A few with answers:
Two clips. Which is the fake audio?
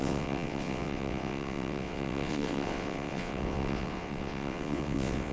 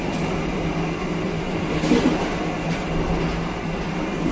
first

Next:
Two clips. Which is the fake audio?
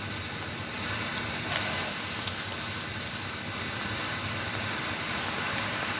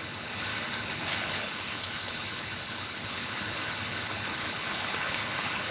second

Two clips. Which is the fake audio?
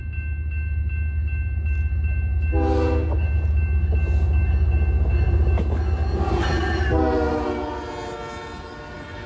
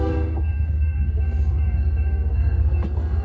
second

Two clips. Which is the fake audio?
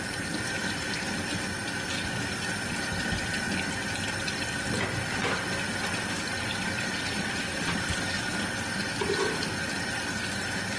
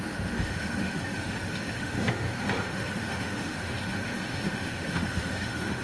second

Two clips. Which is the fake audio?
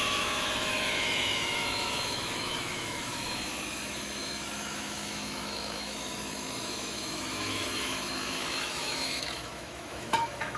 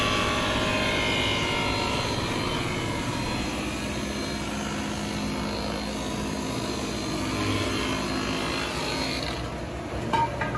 first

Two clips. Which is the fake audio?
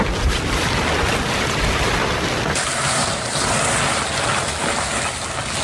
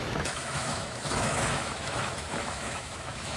second